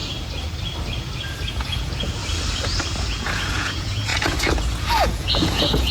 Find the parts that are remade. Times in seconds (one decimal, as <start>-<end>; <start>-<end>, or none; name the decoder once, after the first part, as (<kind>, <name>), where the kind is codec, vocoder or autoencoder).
1.5-2.2 (vocoder, Vocos); 3.0-5.9